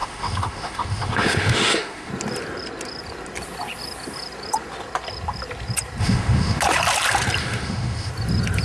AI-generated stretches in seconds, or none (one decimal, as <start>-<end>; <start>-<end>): 0.0-2.1; 6.0-6.6; 7.4-8.1